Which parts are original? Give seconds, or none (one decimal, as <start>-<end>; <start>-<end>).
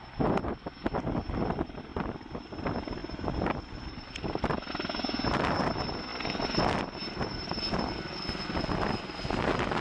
0.0-1.9; 2.5-6.1; 6.6-7.3; 7.9-9.8